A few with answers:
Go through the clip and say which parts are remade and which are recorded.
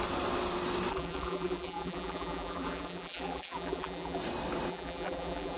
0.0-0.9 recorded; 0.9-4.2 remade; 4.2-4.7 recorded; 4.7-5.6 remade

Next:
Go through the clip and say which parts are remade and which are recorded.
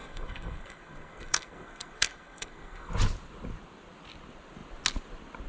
0.0-2.9 remade; 2.9-5.5 recorded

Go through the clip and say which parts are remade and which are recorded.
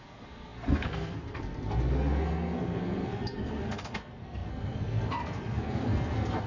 0.0-6.5 remade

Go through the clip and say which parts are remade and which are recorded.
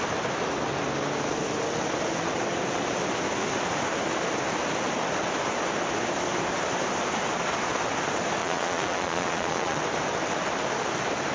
0.0-8.4 recorded; 8.4-9.8 remade; 9.8-11.3 recorded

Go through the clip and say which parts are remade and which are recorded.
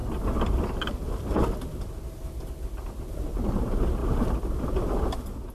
0.0-5.5 recorded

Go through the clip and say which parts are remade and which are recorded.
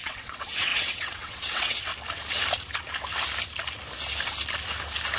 0.0-1.9 remade; 1.9-5.2 recorded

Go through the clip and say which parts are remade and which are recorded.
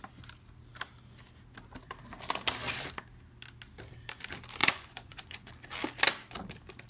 0.0-4.6 recorded; 4.6-5.5 remade; 5.5-6.9 recorded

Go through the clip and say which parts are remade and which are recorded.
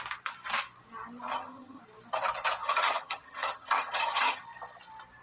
0.0-1.3 recorded; 1.3-1.8 remade; 1.8-2.6 recorded; 2.6-4.4 remade; 4.4-5.2 recorded